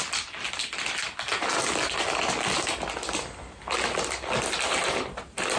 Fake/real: real